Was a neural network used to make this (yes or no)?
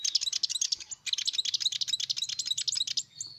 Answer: no